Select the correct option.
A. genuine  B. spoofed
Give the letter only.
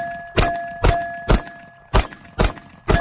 A